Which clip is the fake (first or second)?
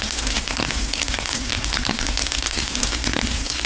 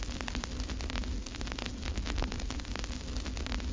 first